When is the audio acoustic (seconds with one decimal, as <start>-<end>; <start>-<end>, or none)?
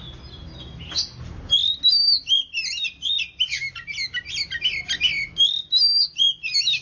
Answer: 0.0-6.8